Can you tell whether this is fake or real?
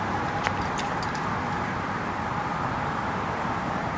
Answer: real